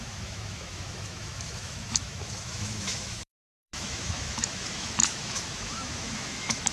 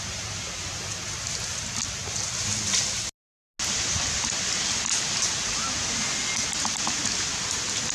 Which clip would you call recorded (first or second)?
second